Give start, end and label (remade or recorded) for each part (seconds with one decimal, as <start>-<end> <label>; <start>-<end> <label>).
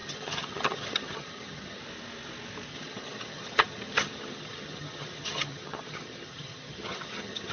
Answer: 0.0-1.8 remade; 1.8-2.7 recorded; 2.7-7.5 remade